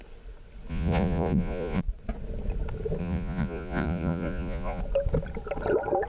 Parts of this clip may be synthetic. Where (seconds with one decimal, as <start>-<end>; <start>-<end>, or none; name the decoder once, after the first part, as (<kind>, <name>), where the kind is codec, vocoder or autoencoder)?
0.7-1.8 (vocoder, Vocos); 3.0-4.8